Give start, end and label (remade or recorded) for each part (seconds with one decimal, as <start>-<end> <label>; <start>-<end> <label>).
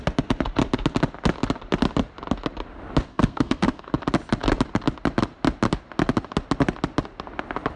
0.0-3.1 recorded; 3.1-3.9 remade; 3.9-7.8 recorded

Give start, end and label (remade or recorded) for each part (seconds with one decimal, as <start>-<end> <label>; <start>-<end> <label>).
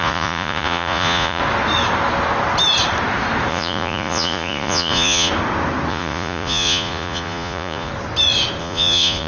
0.0-1.4 remade; 1.4-3.5 recorded; 3.5-5.3 remade; 5.3-5.9 recorded; 5.9-7.9 remade; 7.9-8.6 recorded; 8.6-9.3 remade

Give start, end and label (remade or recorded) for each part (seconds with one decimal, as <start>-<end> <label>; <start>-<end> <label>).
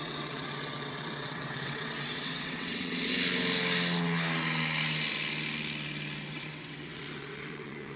0.0-3.1 remade; 3.1-6.3 recorded; 6.3-8.0 remade